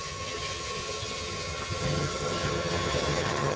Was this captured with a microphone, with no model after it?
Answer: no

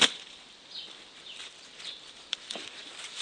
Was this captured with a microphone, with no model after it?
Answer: no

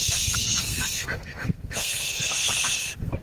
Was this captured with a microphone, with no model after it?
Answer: no